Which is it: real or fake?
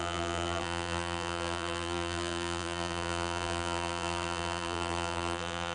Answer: fake